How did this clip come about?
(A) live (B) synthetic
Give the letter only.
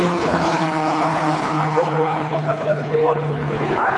B